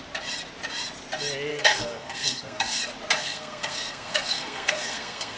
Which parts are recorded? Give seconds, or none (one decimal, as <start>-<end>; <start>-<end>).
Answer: 0.0-1.5; 2.8-3.2